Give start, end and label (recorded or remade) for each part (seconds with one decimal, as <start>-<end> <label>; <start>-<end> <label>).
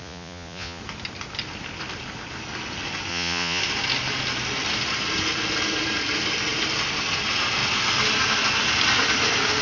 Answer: 0.0-0.8 remade; 0.8-3.1 recorded; 3.1-3.6 remade; 3.6-9.6 recorded